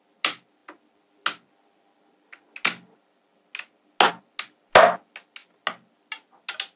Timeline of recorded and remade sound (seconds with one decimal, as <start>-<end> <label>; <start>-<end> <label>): 0.0-6.8 recorded